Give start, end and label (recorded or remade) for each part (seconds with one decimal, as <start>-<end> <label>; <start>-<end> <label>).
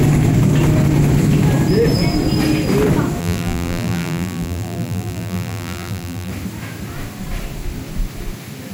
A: 0.0-3.2 recorded; 3.2-6.3 remade; 6.3-8.7 recorded